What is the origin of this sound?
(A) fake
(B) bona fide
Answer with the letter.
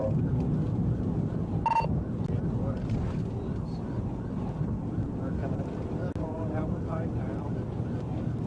B